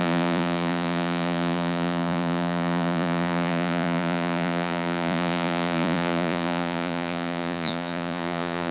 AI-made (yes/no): yes